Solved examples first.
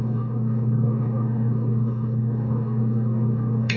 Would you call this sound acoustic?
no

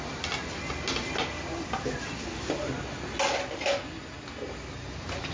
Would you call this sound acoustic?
yes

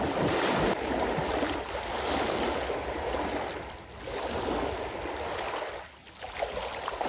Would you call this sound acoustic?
yes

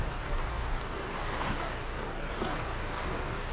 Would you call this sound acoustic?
no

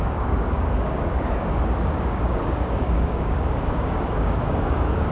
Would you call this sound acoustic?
no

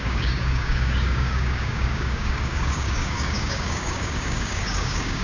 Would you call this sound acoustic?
no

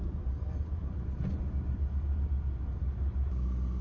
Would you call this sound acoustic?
yes